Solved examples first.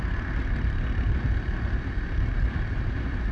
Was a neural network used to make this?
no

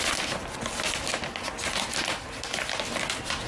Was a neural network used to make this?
no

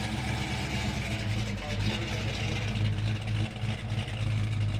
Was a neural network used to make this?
no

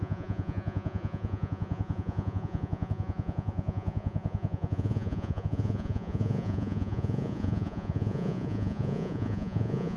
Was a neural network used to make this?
yes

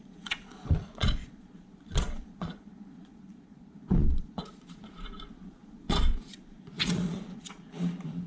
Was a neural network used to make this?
yes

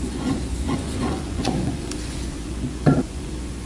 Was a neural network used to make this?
yes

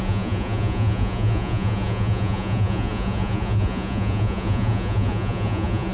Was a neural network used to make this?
yes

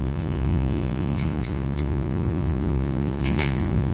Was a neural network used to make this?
yes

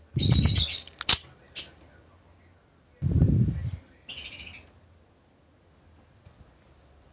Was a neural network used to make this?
no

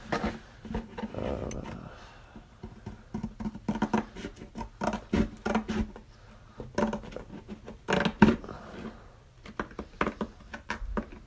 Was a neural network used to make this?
no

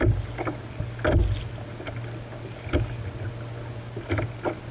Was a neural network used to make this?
no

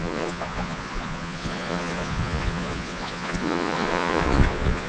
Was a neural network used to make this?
yes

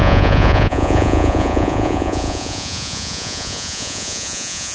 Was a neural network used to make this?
yes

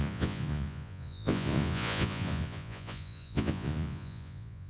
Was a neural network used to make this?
yes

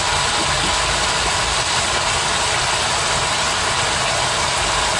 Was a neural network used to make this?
no